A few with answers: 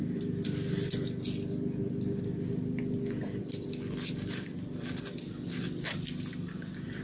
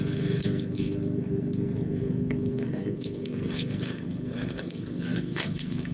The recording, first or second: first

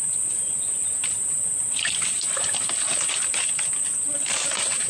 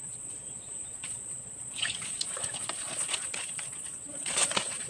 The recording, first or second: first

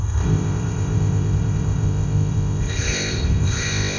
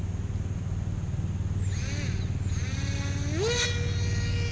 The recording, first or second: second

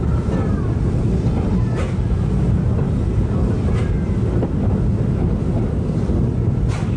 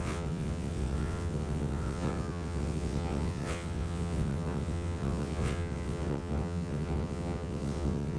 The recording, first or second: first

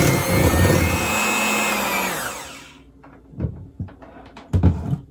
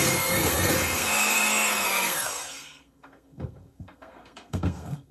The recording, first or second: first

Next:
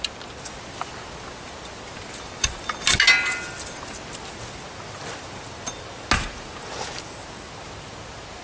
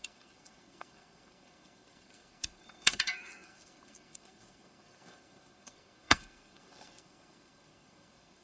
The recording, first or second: first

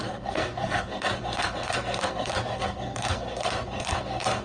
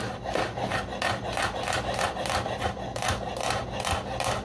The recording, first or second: second